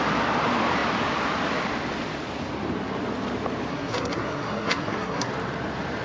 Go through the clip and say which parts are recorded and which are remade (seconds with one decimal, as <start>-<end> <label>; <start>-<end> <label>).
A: 0.0-3.7 recorded; 3.7-5.3 remade; 5.3-6.0 recorded